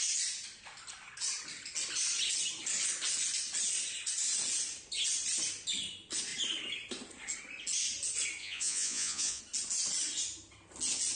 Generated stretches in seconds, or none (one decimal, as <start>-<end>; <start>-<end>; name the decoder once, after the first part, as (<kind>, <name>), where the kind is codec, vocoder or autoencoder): 8.4-9.4 (vocoder, Vocos)